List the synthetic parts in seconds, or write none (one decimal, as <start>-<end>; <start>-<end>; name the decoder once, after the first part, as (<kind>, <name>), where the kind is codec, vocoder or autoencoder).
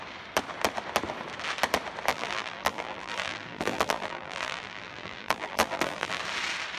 2.1-6.2 (vocoder, BigVGAN v2)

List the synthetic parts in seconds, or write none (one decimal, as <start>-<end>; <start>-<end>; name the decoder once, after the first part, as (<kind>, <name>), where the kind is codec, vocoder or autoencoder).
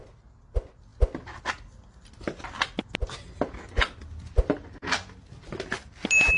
none